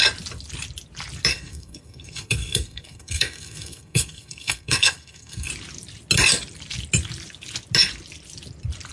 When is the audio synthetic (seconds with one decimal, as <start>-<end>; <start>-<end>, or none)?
1.3-5.5